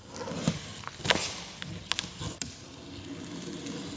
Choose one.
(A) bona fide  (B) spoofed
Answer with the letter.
A